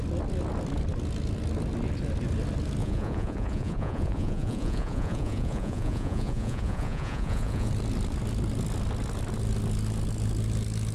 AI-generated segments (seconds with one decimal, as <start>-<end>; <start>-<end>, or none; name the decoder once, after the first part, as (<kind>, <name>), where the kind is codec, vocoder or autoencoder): 2.8-7.7 (vocoder, Vocos)